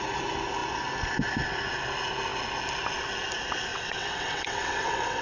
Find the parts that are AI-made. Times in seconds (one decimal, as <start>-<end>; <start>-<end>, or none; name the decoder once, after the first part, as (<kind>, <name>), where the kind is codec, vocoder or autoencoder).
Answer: 3.7-5.2 (vocoder, WaveNeXt)